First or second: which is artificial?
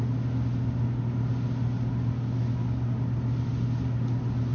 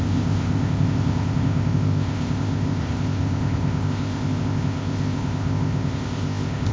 second